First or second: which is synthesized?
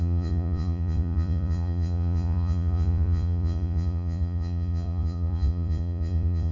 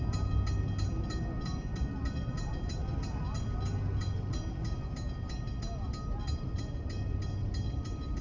first